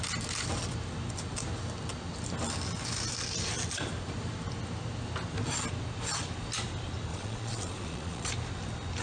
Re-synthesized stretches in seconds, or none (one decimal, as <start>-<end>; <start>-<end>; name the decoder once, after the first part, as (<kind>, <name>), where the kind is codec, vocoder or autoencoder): 7.1-8.3 (vocoder, Vocos)